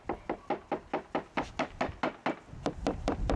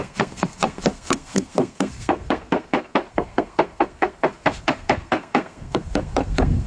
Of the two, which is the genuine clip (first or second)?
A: first